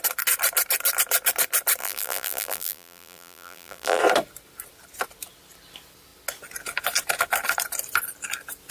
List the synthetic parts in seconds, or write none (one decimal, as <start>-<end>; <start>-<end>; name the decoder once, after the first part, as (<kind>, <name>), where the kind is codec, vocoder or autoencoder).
1.8-4.0 (vocoder, BigVGAN v2)